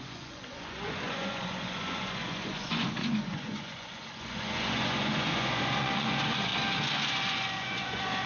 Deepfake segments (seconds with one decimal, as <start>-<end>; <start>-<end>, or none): 0.0-6.5; 7.1-8.3